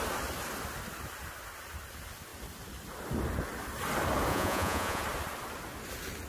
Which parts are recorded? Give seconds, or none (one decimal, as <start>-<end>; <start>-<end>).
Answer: 0.0-4.3; 5.0-6.3